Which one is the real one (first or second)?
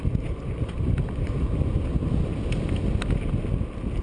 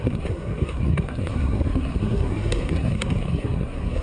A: first